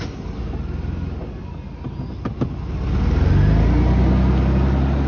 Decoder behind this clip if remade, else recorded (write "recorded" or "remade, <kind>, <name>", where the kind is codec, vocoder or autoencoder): recorded